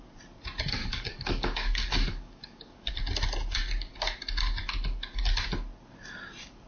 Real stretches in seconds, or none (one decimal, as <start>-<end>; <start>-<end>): 0.0-0.8; 2.9-6.7